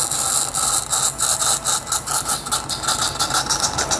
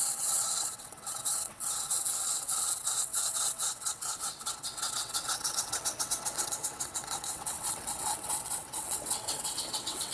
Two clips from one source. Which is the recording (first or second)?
first